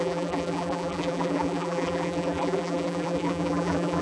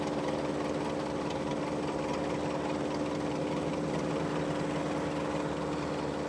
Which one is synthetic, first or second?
first